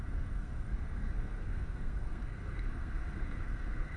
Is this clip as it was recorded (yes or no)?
no